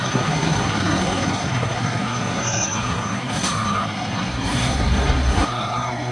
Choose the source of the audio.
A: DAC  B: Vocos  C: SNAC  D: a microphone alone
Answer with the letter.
C